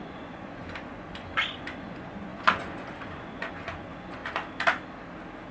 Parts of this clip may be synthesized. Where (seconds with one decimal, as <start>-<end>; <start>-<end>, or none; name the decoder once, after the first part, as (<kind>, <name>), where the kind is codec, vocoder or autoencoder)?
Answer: 0.0-4.2 (vocoder, Vocos)